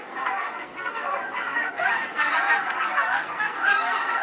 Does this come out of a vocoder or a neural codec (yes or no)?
yes